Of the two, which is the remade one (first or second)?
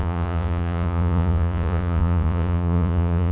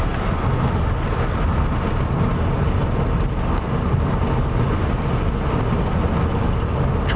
first